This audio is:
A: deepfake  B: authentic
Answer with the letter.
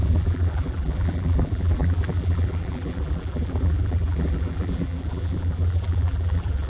A